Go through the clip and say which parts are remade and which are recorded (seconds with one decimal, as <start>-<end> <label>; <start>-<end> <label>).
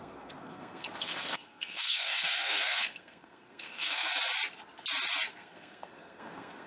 0.0-4.1 remade; 4.1-5.3 recorded; 5.3-6.7 remade